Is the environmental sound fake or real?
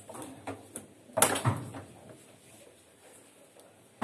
real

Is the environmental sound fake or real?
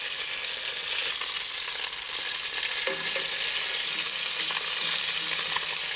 real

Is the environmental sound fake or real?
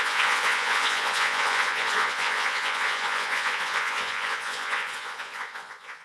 fake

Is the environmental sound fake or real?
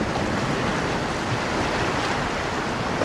real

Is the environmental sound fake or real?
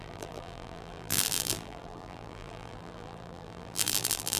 fake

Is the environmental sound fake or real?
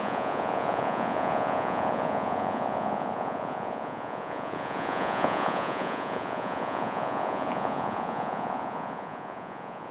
fake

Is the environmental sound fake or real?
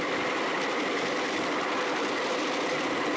real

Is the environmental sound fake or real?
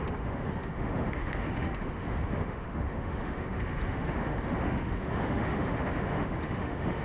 fake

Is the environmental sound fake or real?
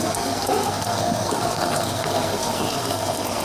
fake